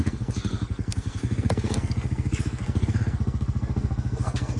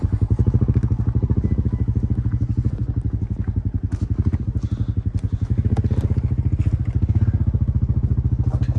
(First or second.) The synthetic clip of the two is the first